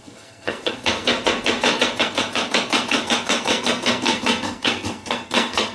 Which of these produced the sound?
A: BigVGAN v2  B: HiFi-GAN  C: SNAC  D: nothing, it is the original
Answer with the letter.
C